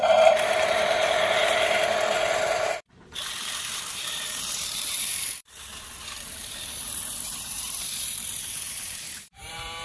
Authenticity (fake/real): fake